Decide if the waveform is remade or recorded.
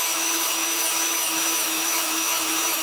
remade